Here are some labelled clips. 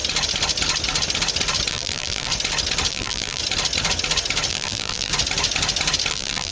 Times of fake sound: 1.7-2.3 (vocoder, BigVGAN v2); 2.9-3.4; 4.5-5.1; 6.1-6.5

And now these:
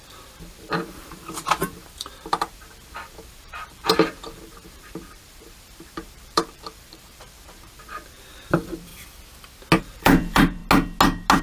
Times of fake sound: 0.0-8.9 (vocoder, BigVGAN v2); 9.8-10.6

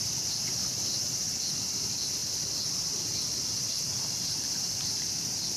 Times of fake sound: 0.5-1.0 (vocoder, BigVGAN v2); 3.6-4.9

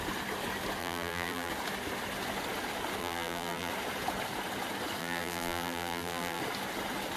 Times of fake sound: 0.8-1.5 (vocoder, BigVGAN v2); 3.0-3.7; 5.0-6.4

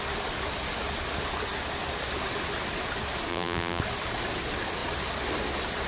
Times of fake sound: 3.3-3.8 (vocoder, BigVGAN v2)

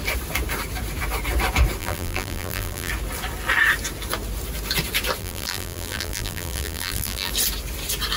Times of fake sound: 1.8-2.9 (vocoder, BigVGAN v2); 5.2-7.3

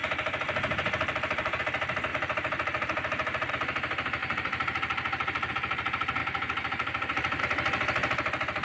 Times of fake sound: 0.0-1.6 (vocoder, BigVGAN v2); 2.1-3.5; 4.2-5.5; 6.2-7.4